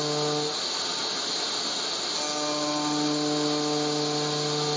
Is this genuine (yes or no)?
yes